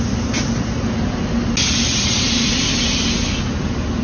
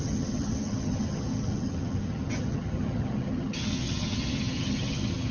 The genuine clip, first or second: first